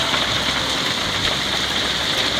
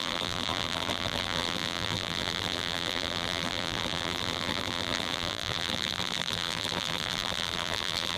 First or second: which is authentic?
first